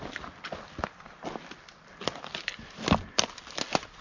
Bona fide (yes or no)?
yes